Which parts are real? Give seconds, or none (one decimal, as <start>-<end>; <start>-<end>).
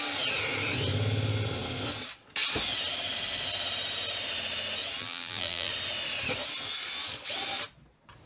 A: 0.0-5.0; 5.7-8.3